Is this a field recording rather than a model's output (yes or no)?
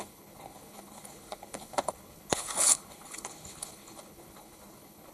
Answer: no